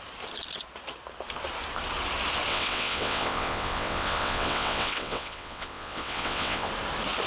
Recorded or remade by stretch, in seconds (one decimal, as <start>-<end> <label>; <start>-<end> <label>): 0.0-2.5 recorded; 2.5-6.7 remade; 6.7-7.3 recorded